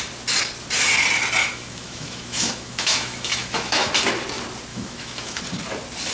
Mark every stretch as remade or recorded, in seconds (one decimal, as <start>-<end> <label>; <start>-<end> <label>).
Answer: 0.0-1.4 recorded; 1.4-3.9 remade; 3.9-4.7 recorded; 4.7-5.4 remade; 5.4-6.1 recorded